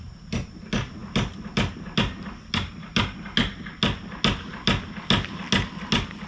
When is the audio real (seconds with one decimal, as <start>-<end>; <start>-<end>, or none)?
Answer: 0.0-6.3

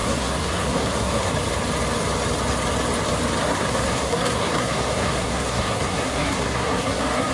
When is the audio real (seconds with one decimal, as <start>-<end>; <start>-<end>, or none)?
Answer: 1.3-3.4

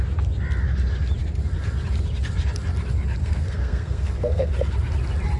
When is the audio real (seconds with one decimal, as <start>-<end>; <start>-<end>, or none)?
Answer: 0.0-3.2; 4.5-5.4

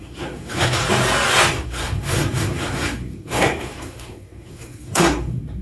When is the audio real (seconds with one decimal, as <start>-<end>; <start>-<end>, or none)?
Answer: 0.8-1.5